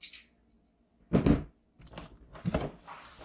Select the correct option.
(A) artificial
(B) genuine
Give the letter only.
B